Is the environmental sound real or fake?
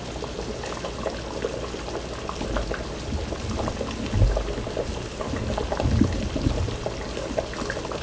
real